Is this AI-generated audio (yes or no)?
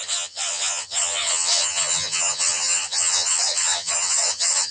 yes